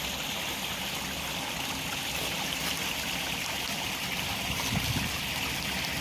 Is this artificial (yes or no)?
no